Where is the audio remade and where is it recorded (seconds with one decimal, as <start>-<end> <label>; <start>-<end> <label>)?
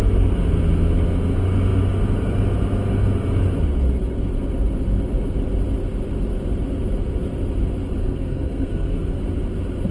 0.0-8.0 recorded; 8.0-9.2 remade; 9.2-9.9 recorded